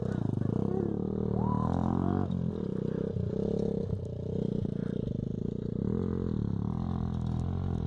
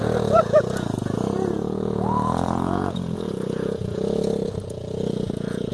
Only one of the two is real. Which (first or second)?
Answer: first